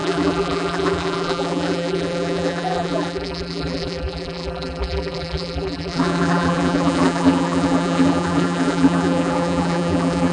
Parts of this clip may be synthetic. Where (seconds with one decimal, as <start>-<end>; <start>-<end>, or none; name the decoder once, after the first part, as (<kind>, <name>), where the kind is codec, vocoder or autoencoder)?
0.0-10.3 (vocoder, BigVGAN v2)